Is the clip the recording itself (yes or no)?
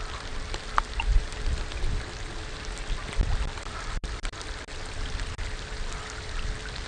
yes